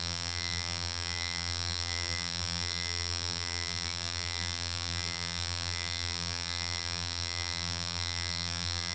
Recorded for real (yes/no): no